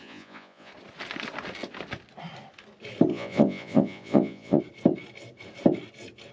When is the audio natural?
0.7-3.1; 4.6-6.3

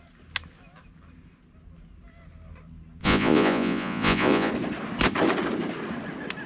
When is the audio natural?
0.0-3.0; 4.5-6.5

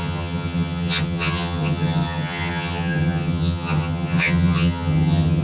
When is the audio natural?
none

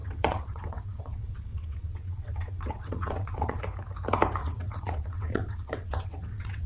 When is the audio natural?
3.6-4.4